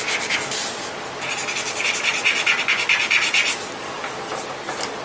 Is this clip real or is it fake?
real